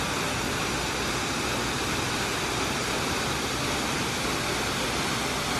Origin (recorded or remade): recorded